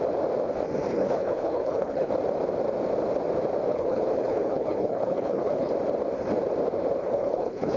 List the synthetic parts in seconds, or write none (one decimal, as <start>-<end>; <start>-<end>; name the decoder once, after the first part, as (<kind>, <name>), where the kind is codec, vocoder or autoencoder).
0.9-2.1 (codec, HILCodec); 3.7-5.7; 7.0-7.8